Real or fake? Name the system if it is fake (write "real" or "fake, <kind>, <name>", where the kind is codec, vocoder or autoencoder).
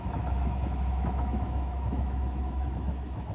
fake, autoencoder, DAC-VAE